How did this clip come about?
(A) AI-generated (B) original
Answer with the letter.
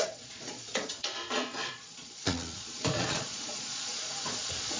A